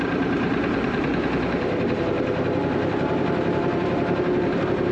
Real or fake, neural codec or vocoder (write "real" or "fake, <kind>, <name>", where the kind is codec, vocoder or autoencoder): fake, vocoder, BigVGAN v2